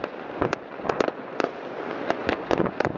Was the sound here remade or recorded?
remade